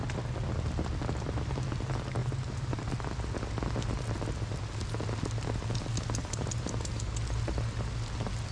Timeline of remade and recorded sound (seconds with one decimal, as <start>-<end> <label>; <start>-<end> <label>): 0.0-2.2 recorded; 2.2-2.9 remade; 2.9-6.2 recorded; 6.2-7.0 remade; 7.0-8.5 recorded